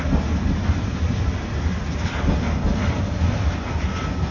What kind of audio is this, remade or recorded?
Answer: recorded